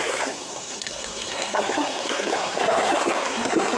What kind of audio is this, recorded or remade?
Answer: remade